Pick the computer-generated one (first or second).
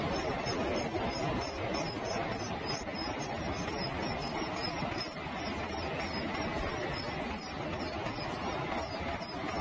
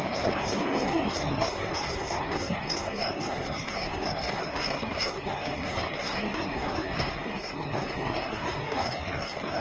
second